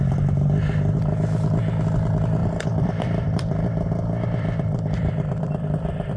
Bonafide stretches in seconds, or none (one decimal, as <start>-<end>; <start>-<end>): 0.0-2.4

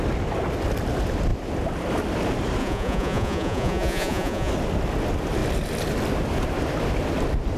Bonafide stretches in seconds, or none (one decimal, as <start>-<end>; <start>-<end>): 0.0-2.6; 4.5-7.6

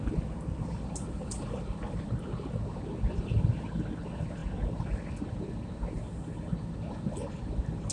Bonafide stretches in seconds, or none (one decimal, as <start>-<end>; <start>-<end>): 0.0-7.9

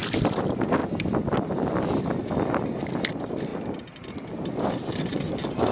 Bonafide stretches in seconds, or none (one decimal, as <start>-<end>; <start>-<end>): 0.8-1.8; 2.2-3.1

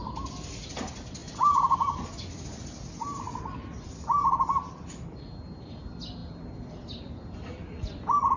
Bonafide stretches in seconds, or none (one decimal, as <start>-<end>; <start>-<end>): 0.0-1.2; 2.1-8.4

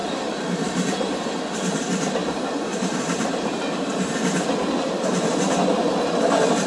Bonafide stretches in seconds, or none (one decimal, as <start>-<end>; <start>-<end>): 1.3-2.2; 4.1-6.7